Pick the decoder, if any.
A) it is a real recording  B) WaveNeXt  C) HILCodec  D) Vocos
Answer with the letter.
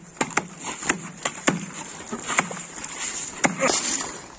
A